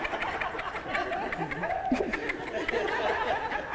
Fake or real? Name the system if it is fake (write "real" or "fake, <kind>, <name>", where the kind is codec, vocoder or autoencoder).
real